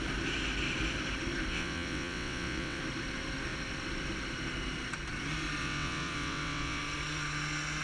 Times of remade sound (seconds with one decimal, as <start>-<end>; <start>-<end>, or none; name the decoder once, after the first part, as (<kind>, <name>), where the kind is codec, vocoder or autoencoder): 1.5-2.8 (vocoder, WaveNeXt); 5.6-6.8